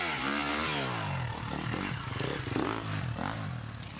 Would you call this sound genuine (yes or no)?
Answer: yes